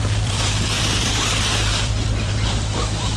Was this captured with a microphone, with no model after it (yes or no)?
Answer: no